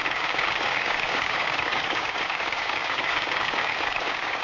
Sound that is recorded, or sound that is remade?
remade